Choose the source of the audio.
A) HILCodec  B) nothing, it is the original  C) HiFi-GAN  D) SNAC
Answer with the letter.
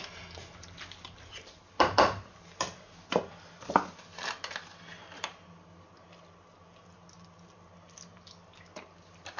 B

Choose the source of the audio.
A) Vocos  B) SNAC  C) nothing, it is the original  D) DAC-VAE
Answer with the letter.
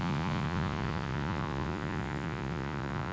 A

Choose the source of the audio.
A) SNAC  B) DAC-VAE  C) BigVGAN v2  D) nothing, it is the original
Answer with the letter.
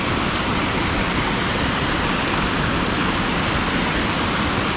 D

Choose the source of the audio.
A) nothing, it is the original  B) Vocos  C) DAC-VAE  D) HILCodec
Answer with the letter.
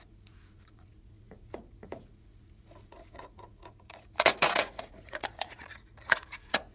B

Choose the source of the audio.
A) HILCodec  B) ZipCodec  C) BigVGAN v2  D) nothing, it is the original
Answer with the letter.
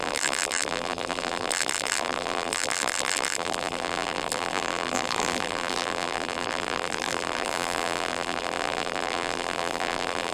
C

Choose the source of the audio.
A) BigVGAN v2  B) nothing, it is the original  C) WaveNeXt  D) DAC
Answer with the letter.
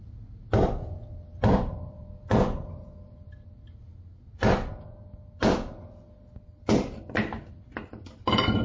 B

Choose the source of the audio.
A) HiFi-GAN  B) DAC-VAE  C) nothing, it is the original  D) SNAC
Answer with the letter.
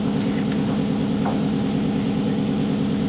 C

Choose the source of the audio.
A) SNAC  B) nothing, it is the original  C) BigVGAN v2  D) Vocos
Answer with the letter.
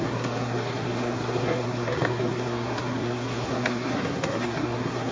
A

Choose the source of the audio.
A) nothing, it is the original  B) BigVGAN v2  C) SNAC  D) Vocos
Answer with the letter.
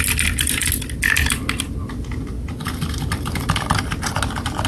A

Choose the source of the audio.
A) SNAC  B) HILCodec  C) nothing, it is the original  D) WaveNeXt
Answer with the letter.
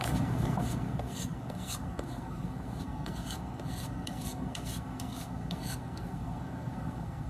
A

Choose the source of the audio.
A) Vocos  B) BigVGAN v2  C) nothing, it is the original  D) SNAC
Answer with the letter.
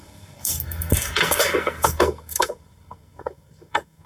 D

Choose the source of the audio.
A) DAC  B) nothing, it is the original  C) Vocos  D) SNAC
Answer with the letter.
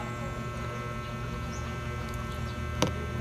B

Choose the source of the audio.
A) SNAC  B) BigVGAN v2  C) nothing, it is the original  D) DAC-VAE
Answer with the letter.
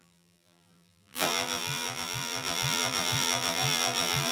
B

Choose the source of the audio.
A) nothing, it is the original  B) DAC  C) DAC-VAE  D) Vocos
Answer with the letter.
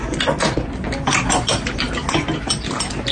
A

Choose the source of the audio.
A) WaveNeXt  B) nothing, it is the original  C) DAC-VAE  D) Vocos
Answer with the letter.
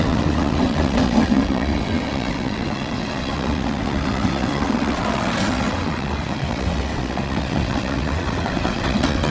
A